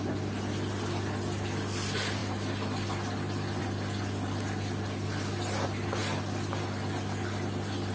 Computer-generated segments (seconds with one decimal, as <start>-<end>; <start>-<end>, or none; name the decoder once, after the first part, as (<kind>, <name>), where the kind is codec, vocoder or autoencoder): none